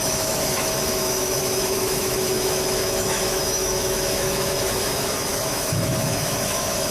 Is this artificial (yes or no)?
yes